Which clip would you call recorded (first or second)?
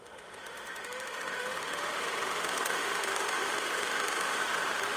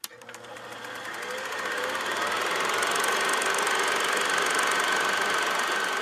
second